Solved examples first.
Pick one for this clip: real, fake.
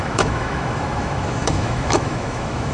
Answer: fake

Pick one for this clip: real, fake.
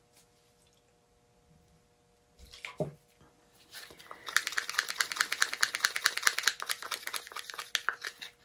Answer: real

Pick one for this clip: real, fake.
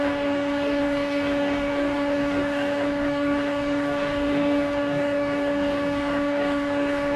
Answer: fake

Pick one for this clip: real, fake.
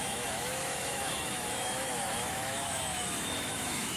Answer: fake